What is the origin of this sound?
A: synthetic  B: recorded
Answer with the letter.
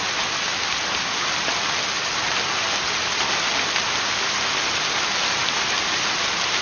B